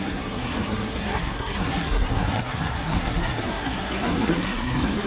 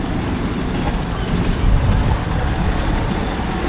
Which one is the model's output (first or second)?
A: first